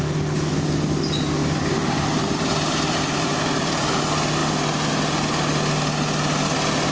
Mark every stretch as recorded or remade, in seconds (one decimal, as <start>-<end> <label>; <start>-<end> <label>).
0.0-1.4 recorded; 1.4-4.0 remade; 4.0-6.9 recorded